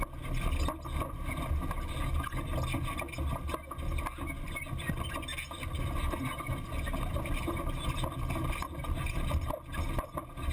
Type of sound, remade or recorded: recorded